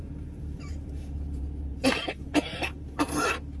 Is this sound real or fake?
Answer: fake